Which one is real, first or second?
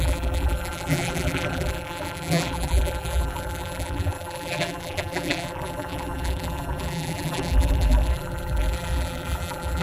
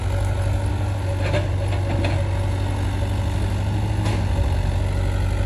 second